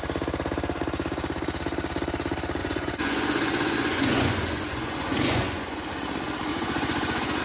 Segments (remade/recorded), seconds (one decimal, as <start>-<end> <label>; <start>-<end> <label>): 0.0-2.6 recorded; 2.6-5.9 remade; 5.9-6.5 recorded; 6.5-7.4 remade